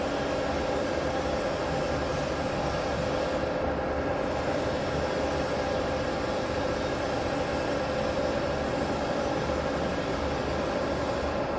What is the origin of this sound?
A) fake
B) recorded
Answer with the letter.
B